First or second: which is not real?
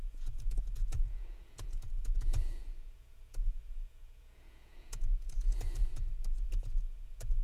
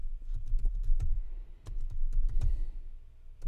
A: first